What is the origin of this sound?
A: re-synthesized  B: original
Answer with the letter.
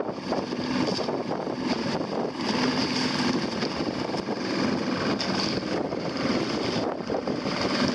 B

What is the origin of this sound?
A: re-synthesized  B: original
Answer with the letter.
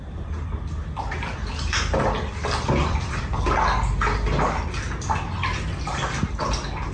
B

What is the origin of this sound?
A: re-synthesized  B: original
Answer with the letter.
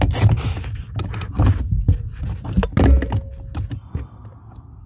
B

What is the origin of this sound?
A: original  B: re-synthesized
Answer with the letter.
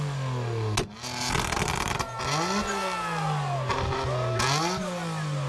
A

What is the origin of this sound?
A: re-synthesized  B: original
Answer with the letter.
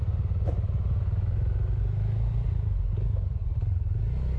B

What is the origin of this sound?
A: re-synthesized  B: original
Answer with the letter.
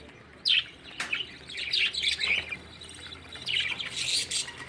B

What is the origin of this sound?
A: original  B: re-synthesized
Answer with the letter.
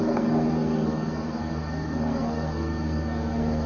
B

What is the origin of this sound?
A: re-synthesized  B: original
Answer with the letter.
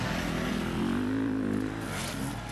B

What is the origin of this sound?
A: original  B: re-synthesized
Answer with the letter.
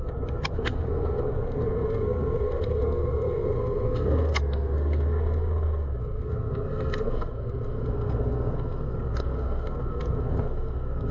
B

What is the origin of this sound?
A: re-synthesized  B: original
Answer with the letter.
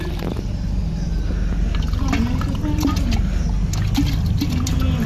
B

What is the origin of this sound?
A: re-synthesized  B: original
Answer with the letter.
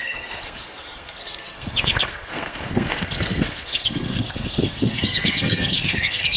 A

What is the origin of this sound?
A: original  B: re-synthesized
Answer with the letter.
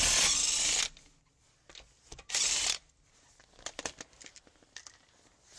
A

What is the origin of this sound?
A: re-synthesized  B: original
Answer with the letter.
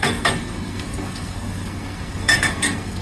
A